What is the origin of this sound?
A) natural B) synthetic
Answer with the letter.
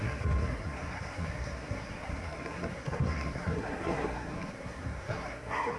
B